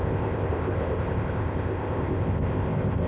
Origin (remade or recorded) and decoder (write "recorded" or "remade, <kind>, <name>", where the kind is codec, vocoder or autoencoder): remade, codec, ZipCodec